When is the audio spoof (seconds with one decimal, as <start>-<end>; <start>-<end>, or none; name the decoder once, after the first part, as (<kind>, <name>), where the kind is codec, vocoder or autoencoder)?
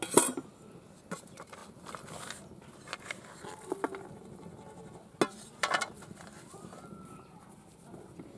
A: none